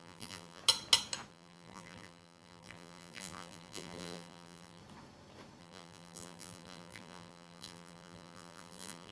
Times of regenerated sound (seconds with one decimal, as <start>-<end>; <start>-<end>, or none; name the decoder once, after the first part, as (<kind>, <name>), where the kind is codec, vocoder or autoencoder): 0.0-0.6 (vocoder, BigVGAN v2); 1.3-4.8; 5.6-9.1